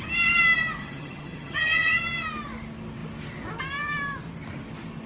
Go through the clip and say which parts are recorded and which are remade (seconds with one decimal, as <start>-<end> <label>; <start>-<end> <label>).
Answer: 0.0-0.8 recorded; 0.8-2.0 remade; 2.0-5.1 recorded